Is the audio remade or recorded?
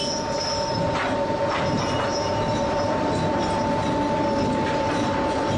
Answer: recorded